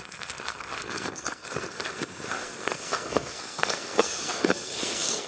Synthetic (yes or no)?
yes